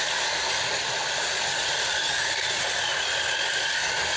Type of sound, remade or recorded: recorded